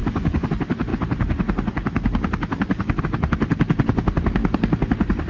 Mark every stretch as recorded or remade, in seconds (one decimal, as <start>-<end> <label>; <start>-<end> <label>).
0.0-0.5 remade; 0.5-5.3 recorded